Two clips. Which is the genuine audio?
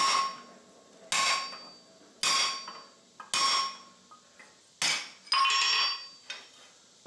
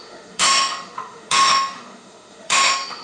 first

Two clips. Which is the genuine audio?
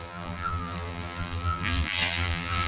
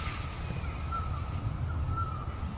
second